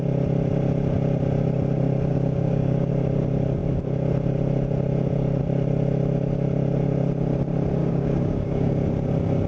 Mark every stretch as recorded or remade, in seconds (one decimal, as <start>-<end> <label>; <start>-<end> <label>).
0.0-2.1 recorded; 2.1-2.9 remade; 2.9-7.8 recorded; 7.8-8.7 remade; 8.7-9.5 recorded